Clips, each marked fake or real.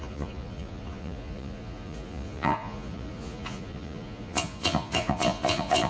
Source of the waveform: fake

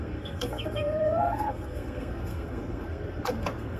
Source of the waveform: fake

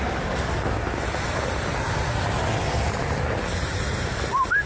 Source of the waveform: real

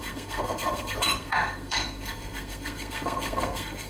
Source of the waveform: fake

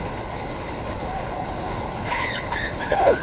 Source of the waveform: fake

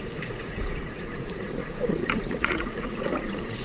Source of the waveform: fake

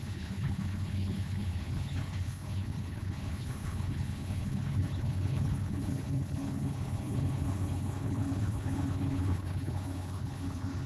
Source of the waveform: fake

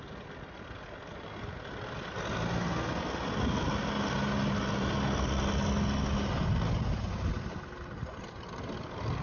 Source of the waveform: real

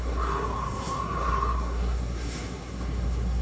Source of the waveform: fake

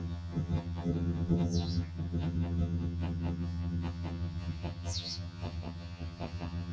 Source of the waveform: fake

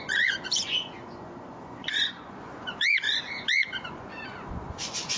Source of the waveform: fake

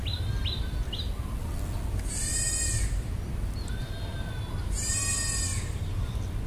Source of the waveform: real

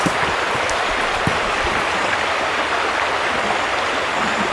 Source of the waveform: real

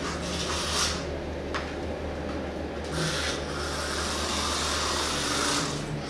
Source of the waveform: real